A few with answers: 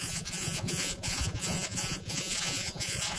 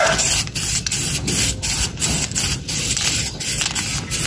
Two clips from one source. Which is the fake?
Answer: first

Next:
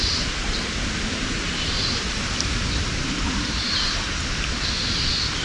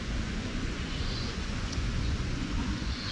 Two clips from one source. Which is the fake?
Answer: second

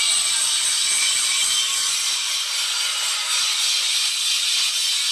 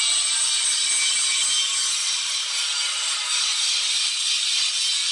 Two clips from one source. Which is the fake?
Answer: first